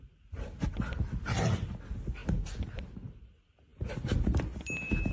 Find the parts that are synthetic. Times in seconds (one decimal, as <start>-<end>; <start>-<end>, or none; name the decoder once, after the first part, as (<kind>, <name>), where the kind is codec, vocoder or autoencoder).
none